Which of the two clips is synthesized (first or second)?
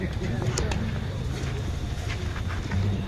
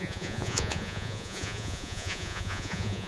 second